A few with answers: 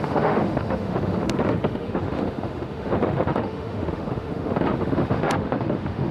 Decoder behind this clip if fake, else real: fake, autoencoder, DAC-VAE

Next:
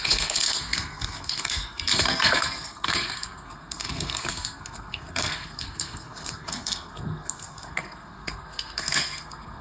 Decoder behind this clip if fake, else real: fake, codec, SNAC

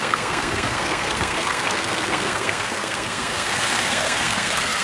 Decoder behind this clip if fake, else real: fake, codec, SNAC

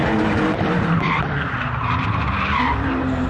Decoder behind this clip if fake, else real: fake, vocoder, BigVGAN v2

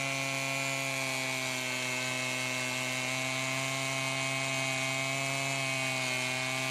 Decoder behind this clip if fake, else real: real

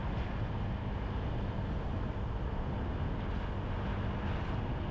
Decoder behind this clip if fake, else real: real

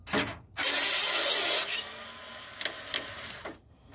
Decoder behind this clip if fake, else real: real